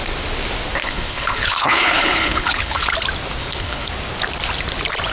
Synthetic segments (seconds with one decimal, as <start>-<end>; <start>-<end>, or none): 0.8-2.9; 3.4-3.9

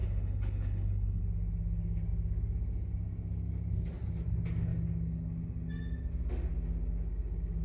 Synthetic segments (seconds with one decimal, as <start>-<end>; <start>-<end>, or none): 0.0-1.2

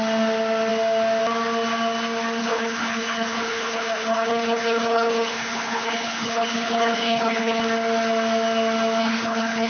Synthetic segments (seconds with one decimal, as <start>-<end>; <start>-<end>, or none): 2.4-7.6; 9.0-9.7

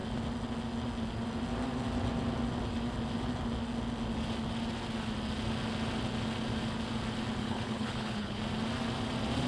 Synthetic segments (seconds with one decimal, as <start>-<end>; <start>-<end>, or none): 7.4-8.4

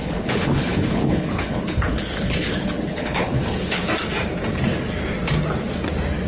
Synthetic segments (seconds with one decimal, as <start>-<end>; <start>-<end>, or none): 0.0-3.8